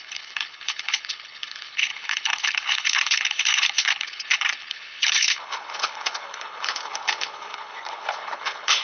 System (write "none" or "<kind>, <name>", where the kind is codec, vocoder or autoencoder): codec, HILCodec